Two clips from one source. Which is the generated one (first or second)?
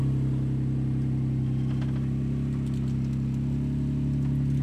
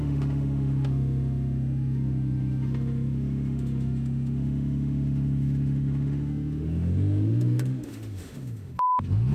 second